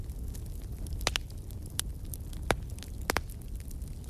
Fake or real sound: real